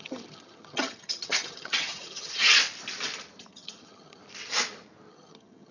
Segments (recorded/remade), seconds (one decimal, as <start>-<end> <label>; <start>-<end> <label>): 0.0-2.5 remade; 2.5-3.4 recorded; 3.4-4.2 remade; 4.2-5.1 recorded; 5.1-5.7 remade